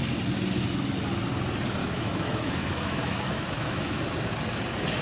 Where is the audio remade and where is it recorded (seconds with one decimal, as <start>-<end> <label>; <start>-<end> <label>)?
0.0-1.8 recorded; 1.8-4.0 remade; 4.0-5.0 recorded